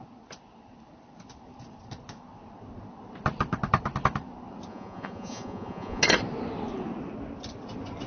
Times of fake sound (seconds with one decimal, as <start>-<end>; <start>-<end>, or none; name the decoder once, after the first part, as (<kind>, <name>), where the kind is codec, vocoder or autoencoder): 4.7-6.0 (vocoder, Vocos)